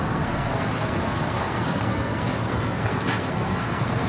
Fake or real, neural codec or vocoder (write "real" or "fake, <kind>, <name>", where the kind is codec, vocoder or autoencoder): fake, codec, SNAC